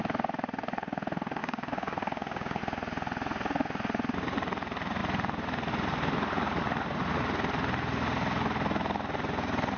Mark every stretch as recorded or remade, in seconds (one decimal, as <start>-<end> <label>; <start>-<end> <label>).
0.0-1.4 recorded; 1.4-2.6 remade; 2.6-9.8 recorded